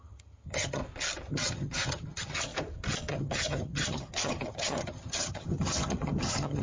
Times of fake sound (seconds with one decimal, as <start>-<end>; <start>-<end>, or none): 0.0-0.8; 1.3-2.5; 3.1-6.6

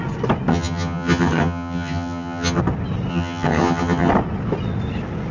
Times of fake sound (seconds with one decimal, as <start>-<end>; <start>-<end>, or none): 0.5-2.6; 3.1-4.1

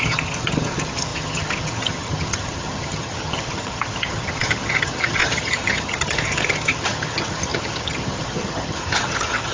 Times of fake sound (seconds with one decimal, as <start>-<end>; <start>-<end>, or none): 0.0-9.5

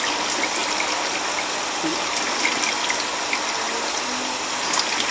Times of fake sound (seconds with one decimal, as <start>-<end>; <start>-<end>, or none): none

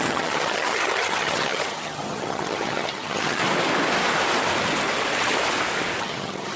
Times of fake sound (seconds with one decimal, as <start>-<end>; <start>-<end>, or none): 0.0-3.4; 6.0-6.6

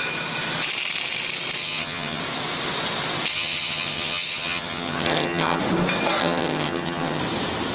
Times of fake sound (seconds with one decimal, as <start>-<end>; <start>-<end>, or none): 1.6-2.2; 3.3-5.6; 6.2-7.2

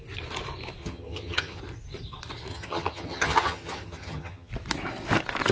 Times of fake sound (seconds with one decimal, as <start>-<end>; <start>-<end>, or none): 0.8-1.6; 2.5-4.5